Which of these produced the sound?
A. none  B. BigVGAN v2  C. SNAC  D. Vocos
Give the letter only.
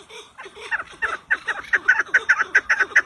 B